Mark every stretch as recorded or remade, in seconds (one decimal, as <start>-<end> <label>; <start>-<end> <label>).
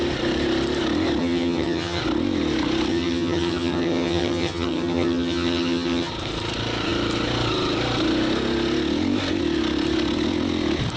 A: 0.0-1.2 recorded; 1.2-2.0 remade; 2.0-2.9 recorded; 2.9-6.1 remade; 6.1-11.0 recorded